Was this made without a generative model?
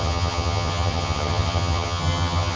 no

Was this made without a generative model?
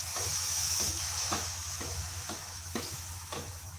no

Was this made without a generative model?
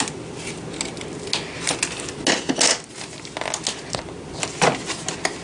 yes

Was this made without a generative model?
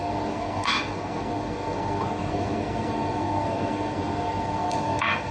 no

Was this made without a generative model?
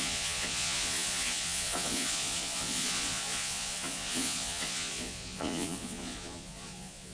no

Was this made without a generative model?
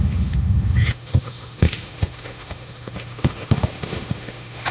no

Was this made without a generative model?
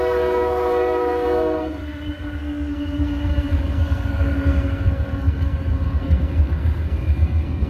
no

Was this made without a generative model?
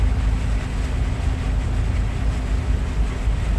yes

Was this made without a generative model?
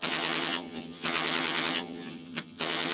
no